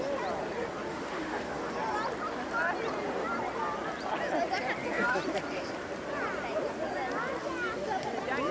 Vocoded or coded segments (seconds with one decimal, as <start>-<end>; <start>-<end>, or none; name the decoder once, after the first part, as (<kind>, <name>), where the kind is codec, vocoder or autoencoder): 0.9-1.6 (autoencoder, DAC-VAE)